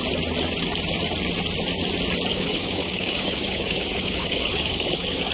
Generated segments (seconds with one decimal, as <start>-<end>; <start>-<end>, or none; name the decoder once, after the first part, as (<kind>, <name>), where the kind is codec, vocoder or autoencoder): 2.3-5.3 (codec, DAC)